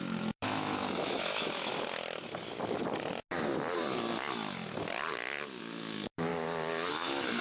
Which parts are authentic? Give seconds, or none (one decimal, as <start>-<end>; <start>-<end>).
1.7-5.6; 6.3-6.9